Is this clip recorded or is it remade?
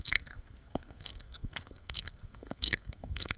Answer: remade